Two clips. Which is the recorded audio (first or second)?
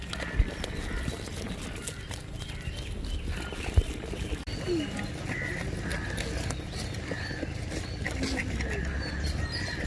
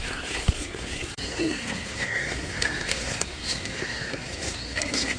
first